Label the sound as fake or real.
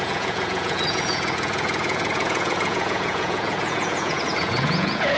fake